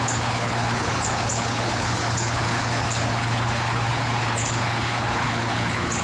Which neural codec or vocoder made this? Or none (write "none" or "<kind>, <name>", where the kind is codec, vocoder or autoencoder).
codec, HILCodec